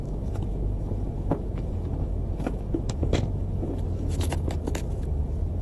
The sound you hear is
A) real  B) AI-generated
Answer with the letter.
B